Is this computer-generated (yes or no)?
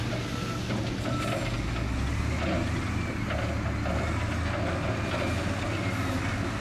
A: no